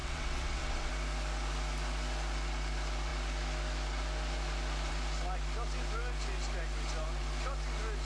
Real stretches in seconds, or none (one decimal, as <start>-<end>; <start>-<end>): 0.9-8.0